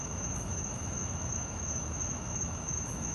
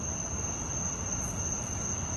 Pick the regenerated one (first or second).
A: first